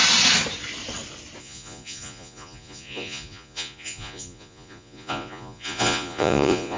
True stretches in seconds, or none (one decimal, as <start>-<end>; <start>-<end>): 0.0-1.4